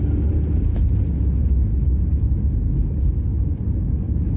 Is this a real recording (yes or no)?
yes